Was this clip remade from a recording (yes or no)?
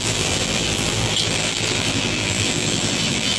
yes